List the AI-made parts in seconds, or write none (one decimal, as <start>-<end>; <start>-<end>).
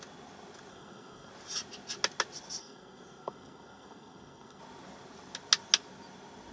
0.7-1.3; 2.6-4.6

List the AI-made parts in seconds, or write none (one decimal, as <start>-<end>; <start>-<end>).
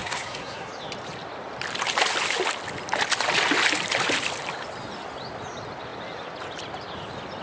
0.0-0.7